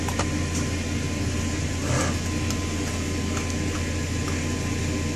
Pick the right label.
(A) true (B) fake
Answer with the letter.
A